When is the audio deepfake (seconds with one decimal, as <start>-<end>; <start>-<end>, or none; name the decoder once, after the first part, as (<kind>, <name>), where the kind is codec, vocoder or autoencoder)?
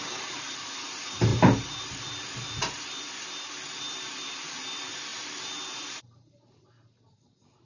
none